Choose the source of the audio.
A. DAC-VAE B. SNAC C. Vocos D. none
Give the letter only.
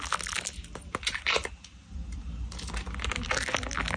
D